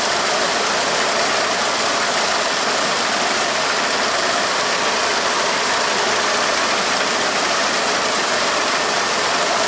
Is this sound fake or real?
fake